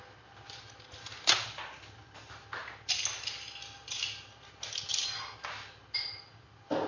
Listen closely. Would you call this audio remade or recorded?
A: recorded